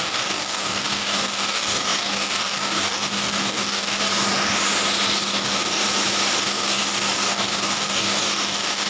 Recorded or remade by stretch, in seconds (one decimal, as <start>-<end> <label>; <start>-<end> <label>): 0.0-4.0 remade; 4.0-5.2 recorded; 5.2-5.8 remade; 5.8-6.4 recorded; 6.4-8.9 remade